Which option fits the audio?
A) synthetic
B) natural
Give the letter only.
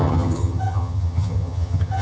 A